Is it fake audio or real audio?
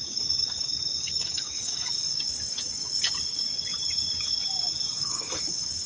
fake